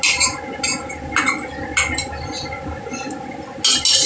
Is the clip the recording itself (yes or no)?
yes